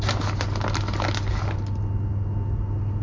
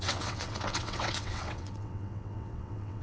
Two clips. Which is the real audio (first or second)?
first